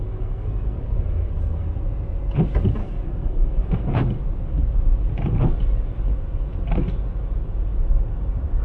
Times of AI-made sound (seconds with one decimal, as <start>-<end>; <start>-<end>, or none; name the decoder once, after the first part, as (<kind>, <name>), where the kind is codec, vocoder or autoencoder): 0.0-1.8 (codec, SNAC); 2.8-4.0